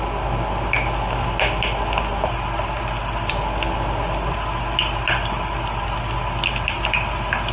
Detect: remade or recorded recorded